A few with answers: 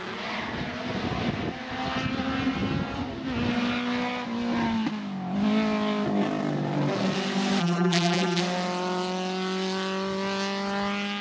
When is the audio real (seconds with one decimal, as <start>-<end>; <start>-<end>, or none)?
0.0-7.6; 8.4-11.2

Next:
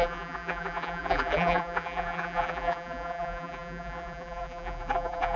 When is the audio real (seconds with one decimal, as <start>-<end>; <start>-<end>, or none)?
none

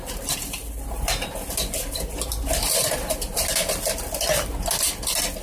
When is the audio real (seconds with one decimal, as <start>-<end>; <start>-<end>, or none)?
0.0-0.6; 3.8-5.4